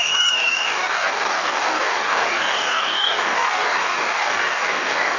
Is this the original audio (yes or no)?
no